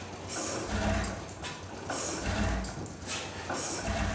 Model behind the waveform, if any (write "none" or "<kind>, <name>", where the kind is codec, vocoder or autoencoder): none